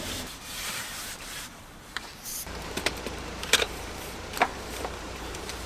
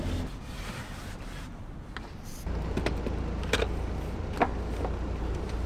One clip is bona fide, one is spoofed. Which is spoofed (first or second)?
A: first